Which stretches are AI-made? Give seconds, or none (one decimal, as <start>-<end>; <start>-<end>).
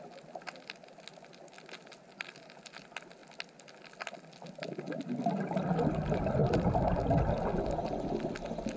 none